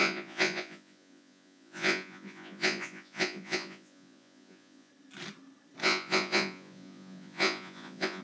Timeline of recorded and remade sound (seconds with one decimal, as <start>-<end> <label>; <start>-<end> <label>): 0.0-4.9 remade; 4.9-5.8 recorded; 5.8-8.2 remade